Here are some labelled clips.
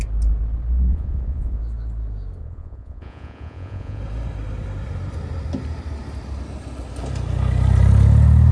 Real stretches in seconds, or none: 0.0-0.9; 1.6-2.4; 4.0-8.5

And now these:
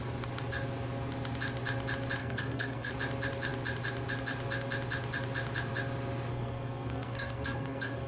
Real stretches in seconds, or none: 0.0-2.2; 2.9-6.3

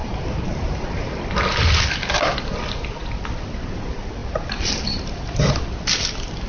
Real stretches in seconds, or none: 1.1-4.2; 5.6-6.5

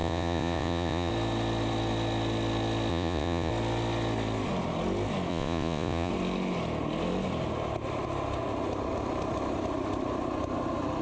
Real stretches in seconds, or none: 1.1-2.9; 3.5-5.3; 6.1-11.0

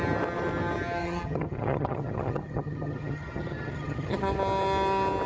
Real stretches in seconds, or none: 0.0-1.0; 4.2-5.3

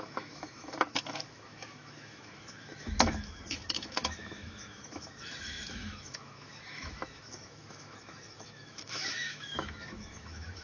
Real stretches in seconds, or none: none